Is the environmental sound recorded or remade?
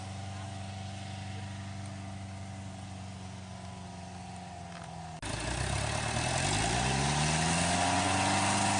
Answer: recorded